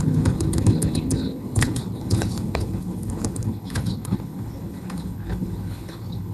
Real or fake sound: fake